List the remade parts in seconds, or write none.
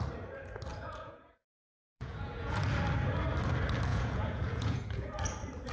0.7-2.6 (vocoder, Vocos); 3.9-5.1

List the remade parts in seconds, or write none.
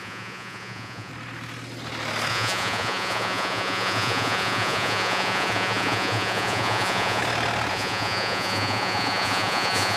0.0-1.1 (vocoder, Vocos); 2.3-7.2; 7.7-10.0